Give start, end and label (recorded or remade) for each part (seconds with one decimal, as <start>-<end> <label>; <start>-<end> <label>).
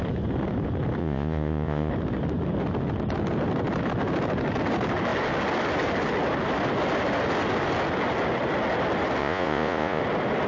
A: 0.0-1.0 recorded; 1.0-1.9 remade; 1.9-9.2 recorded; 9.2-10.0 remade; 10.0-10.5 recorded